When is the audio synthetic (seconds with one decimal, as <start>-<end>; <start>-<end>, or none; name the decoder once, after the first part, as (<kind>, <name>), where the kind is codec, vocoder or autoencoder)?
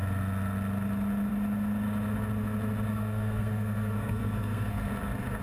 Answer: 2.9-4.9 (codec, SNAC)